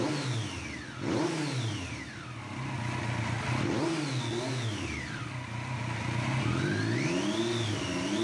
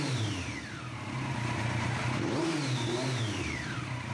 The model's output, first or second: second